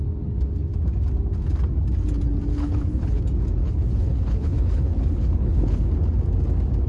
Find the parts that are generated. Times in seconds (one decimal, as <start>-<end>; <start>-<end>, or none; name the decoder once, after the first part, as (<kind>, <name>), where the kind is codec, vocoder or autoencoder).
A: 2.5-3.2 (codec, HILCodec); 3.6-5.9